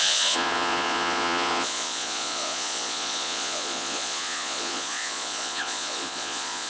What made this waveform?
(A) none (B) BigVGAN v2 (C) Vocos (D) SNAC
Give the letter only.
C